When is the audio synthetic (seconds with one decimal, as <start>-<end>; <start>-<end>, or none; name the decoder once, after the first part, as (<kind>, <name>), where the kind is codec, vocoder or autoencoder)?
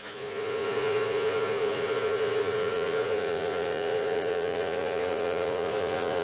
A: 0.0-6.2 (vocoder, Vocos)